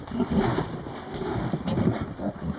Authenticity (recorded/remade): recorded